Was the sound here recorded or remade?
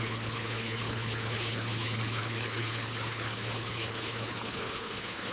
remade